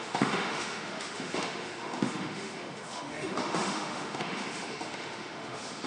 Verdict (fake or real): fake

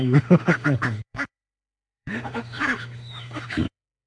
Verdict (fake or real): fake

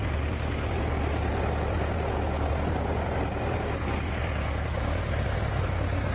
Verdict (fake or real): real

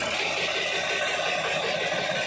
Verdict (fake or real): real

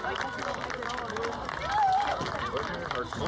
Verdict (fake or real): real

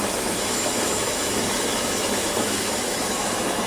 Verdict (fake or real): fake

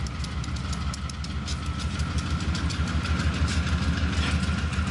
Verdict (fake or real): real